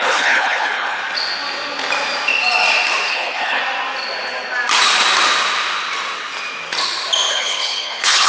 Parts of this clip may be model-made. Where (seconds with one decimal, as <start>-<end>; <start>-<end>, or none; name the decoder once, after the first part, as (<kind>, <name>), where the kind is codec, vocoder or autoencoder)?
0.0-1.0 (codec, HILCodec); 3.1-3.6; 7.3-8.3